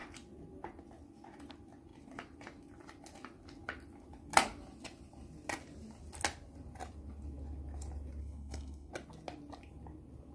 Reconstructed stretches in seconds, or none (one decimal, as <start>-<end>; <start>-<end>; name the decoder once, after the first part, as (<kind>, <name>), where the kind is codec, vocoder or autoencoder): 8.2-8.9 (codec, SNAC)